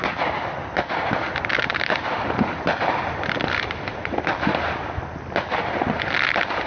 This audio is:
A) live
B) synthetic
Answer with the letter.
A